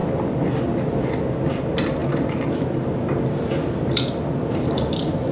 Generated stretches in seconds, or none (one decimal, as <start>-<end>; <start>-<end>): 1.5-5.3